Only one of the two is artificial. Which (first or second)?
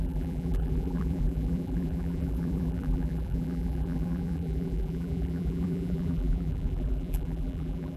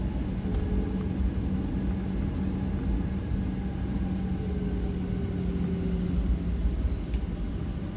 first